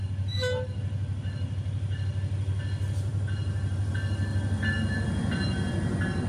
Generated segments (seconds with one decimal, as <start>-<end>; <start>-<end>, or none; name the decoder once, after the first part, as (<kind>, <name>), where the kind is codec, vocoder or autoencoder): 3.1-3.9 (vocoder, BigVGAN v2)